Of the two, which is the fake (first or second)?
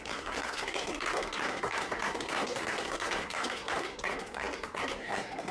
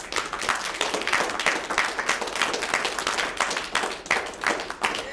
first